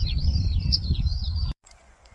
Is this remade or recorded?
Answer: remade